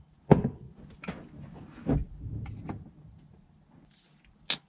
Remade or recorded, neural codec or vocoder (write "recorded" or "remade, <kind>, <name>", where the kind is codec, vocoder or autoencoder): recorded